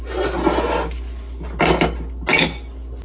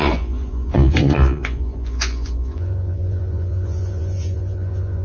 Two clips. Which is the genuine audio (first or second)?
first